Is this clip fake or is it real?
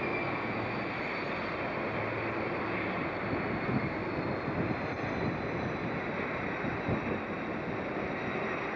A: real